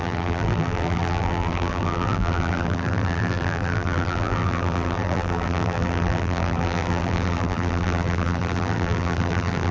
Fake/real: fake